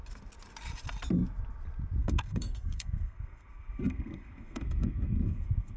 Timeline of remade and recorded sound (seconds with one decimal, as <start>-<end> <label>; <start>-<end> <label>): 0.0-2.0 recorded; 2.0-5.8 remade